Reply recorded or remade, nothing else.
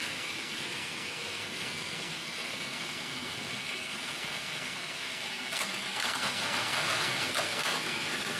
remade